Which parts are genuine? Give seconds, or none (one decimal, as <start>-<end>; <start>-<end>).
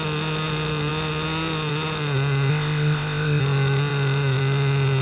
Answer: 0.0-2.5; 3.4-5.0